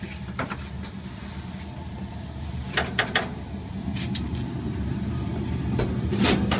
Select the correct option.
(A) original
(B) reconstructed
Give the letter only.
A